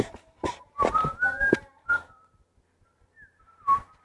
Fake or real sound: fake